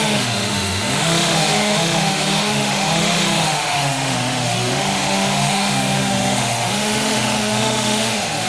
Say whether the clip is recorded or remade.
remade